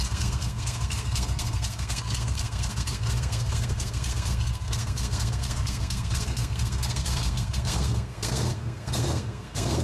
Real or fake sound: fake